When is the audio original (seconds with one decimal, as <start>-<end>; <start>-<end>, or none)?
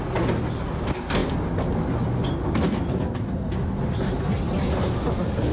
0.0-5.5